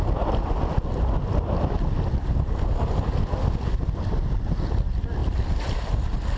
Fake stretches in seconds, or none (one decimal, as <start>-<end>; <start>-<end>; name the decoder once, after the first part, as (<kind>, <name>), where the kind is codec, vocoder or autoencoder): none